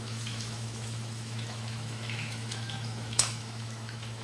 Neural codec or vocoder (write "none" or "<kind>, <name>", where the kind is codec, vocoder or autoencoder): autoencoder, DAC-VAE